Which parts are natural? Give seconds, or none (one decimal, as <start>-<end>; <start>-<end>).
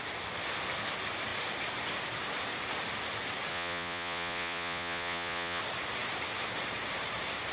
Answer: 0.0-3.5; 5.6-7.5